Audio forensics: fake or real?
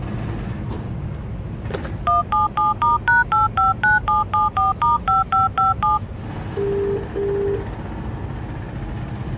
real